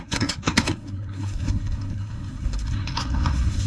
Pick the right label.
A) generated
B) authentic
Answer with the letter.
A